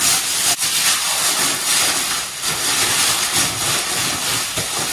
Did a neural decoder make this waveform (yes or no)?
no